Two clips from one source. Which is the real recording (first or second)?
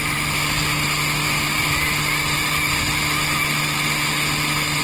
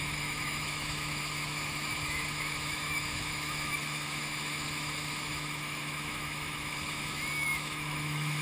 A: first